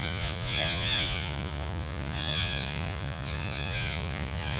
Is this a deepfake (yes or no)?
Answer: yes